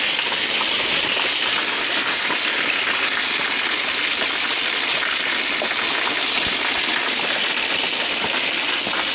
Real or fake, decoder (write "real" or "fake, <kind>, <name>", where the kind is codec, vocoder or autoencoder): real